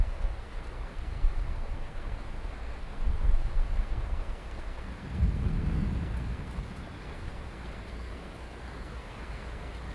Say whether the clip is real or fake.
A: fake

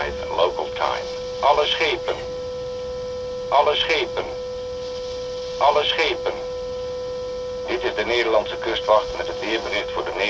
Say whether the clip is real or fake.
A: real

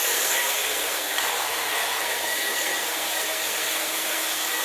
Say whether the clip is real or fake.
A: fake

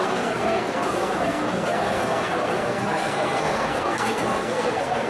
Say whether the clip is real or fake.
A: fake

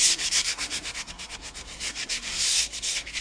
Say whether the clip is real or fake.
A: fake